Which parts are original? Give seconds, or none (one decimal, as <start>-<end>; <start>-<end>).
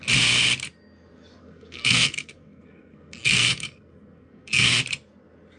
0.0-1.4; 4.8-5.6